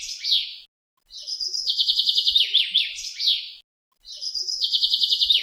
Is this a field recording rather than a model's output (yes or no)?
yes